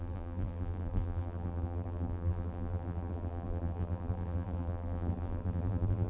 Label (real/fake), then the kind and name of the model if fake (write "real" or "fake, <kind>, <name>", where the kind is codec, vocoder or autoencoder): fake, vocoder, BigVGAN v2